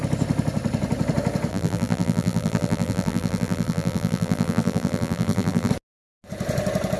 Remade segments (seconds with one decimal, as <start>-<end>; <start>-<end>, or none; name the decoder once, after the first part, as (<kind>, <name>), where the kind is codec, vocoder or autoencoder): 1.5-5.7 (vocoder, BigVGAN v2)